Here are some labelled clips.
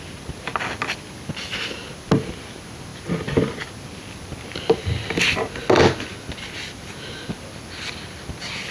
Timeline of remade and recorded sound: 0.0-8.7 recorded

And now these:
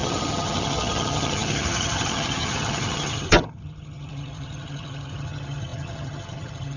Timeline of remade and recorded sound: 0.0-6.8 remade

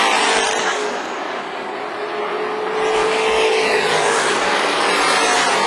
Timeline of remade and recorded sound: 0.0-0.6 recorded; 0.6-1.7 remade; 1.7-3.0 recorded; 3.0-4.9 remade; 4.9-5.7 recorded

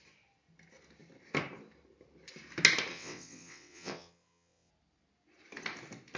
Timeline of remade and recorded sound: 0.0-2.9 recorded; 2.9-4.7 remade; 4.7-6.2 recorded

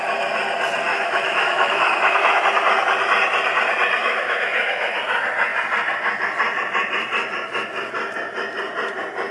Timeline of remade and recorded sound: 0.0-0.9 recorded; 0.9-2.4 remade; 2.4-4.0 recorded; 4.0-5.0 remade; 5.0-9.3 recorded

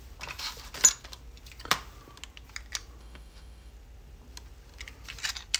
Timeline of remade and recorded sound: 0.0-3.0 recorded; 3.0-3.7 remade; 3.7-5.6 recorded